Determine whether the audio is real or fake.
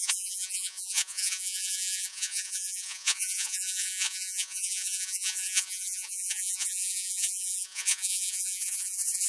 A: fake